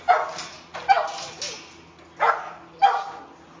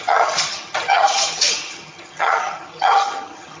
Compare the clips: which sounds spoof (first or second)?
second